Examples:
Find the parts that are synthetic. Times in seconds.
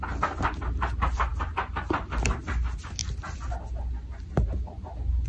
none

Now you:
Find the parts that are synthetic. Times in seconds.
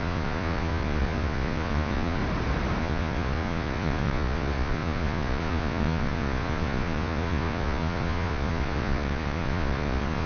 0.0-2.2 (vocoder, Vocos); 2.8-10.3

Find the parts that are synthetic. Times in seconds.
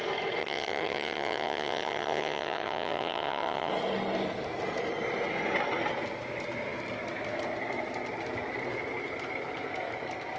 0.4-3.7 (vocoder, HiFi-GAN)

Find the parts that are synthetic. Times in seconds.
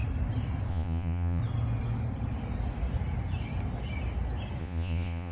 0.7-1.4 (vocoder, Vocos); 4.6-5.3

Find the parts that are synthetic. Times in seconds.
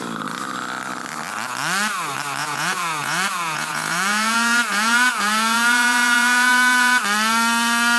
2.4-7.0 (vocoder, Vocos)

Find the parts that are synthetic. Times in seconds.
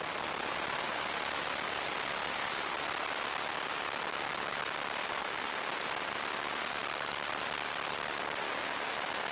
2.2-2.9 (vocoder, BigVGAN v2); 6.8-8.6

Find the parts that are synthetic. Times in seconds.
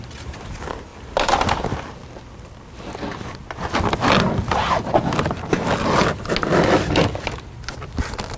0.9-5.2 (vocoder, BigVGAN v2)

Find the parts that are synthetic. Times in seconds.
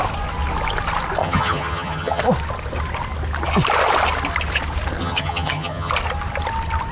1.2-2.2 (vocoder, HiFi-GAN); 5.0-5.9